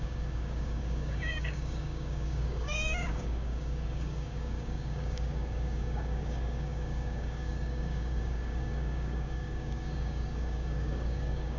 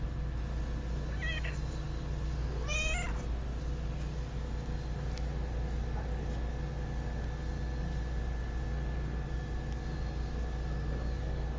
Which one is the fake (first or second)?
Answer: first